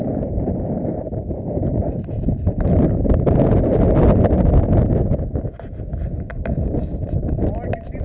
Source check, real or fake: fake